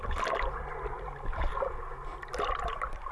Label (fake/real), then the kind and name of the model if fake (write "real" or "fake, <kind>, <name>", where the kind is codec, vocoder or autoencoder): real